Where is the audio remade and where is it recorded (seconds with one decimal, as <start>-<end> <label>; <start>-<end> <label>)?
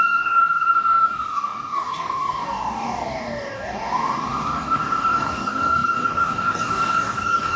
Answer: 0.0-7.6 remade